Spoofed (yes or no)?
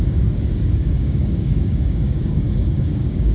yes